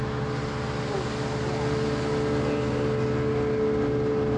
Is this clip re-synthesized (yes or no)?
no